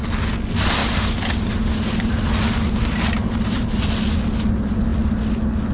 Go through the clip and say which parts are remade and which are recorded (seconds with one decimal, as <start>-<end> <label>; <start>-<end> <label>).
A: 0.0-0.8 recorded; 0.8-3.9 remade; 3.9-5.7 recorded